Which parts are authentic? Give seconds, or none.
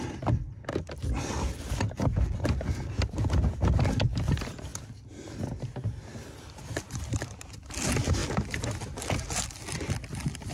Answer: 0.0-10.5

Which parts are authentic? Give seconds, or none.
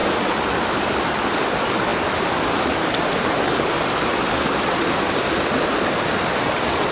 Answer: 0.0-6.9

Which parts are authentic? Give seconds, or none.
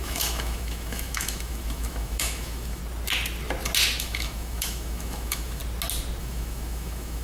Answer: 2.8-4.0; 5.6-6.2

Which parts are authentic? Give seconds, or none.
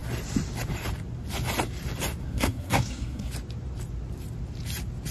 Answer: 0.0-2.2; 3.3-5.1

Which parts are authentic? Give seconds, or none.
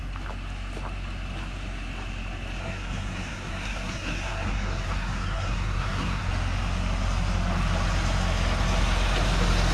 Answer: 0.0-2.6; 6.3-9.7